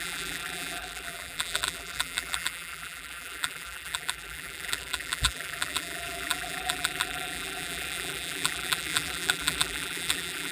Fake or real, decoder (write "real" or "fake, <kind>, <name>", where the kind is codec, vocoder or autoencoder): fake, vocoder, BigVGAN v2